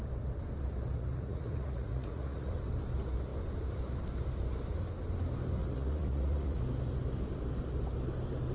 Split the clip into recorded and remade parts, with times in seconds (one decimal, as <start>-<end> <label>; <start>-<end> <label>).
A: 0.0-0.9 recorded; 0.9-2.5 remade; 2.5-5.6 recorded; 5.6-6.6 remade; 6.6-8.5 recorded